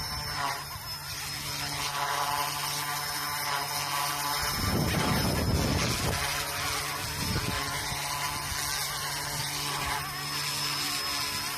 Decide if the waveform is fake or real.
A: real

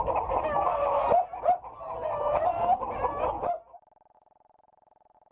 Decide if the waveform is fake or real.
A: real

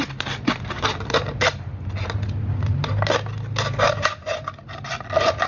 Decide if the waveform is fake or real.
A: real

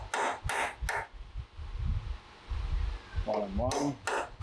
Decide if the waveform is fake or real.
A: real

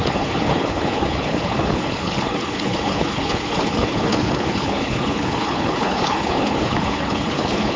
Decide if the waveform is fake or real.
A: fake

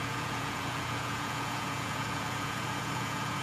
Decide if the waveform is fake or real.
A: fake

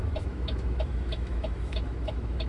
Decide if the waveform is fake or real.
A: fake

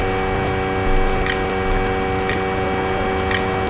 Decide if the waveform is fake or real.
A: real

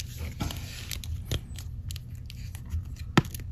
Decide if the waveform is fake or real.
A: real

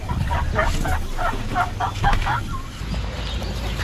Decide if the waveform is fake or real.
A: real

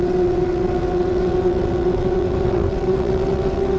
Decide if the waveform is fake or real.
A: fake